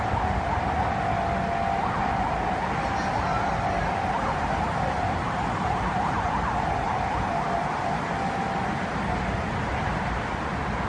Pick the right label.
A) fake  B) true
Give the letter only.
B